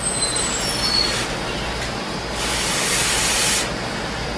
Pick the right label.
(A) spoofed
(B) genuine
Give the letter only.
B